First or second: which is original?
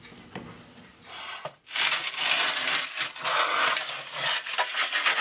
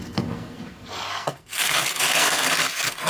first